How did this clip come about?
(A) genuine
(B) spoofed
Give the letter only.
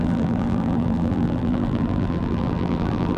B